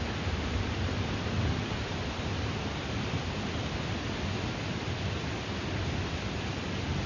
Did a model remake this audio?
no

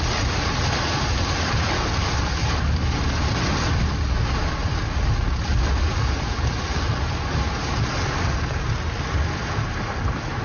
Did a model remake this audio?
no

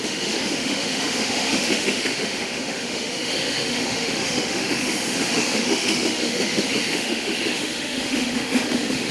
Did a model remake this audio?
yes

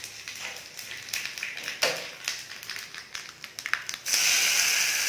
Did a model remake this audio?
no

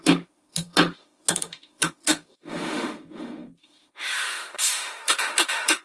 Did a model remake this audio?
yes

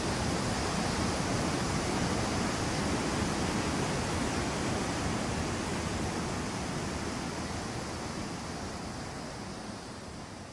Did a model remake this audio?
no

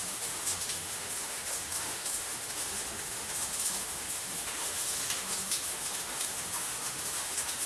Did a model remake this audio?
yes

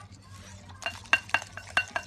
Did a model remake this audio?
no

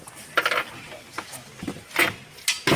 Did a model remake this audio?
no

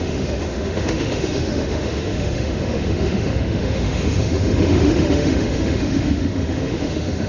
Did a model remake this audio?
yes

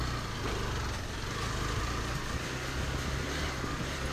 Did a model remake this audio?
no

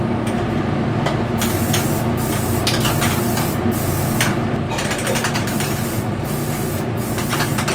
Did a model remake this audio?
no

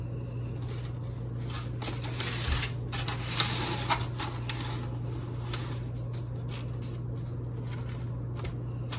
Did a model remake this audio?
no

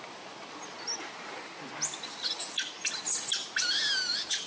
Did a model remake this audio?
no